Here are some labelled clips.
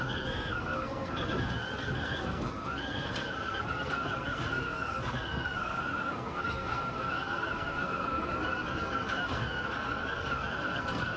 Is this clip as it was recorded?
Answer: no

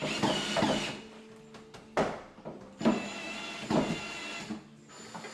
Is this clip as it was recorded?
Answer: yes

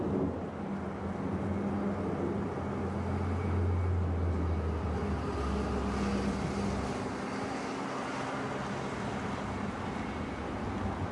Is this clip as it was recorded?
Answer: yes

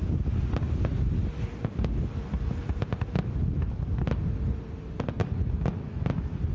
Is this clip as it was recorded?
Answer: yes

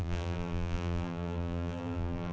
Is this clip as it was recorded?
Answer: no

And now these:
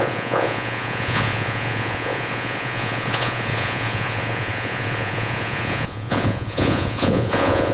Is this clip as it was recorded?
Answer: no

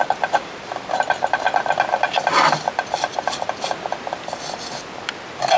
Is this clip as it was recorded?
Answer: yes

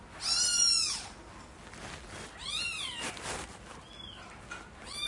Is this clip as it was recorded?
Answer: yes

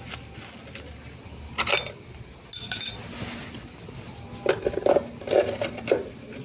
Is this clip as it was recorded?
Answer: yes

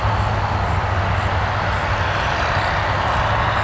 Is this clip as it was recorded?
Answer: yes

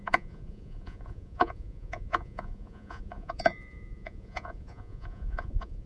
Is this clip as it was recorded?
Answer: no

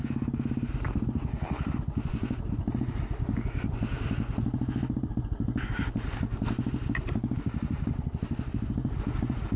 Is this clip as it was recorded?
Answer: yes